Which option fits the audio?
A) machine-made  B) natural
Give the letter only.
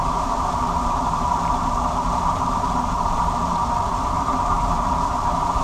A